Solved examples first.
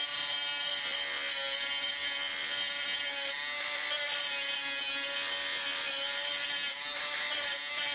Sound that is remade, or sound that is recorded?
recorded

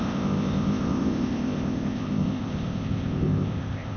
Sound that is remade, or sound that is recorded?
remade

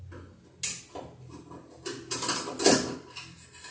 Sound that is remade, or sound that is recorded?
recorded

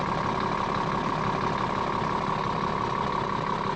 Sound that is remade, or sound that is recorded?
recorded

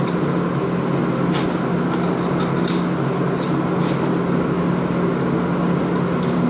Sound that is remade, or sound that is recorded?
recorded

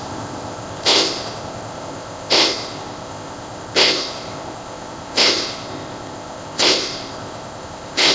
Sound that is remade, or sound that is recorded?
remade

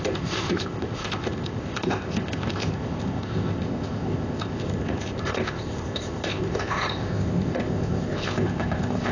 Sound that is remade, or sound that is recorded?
remade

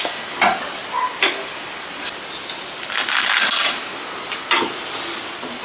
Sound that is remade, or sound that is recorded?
recorded